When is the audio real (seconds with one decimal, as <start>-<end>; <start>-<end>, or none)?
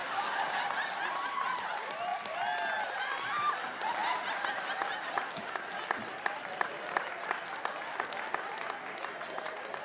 0.6-9.8